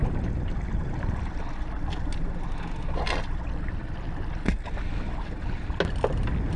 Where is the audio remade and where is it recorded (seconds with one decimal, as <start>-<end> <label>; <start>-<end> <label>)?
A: 0.0-6.6 recorded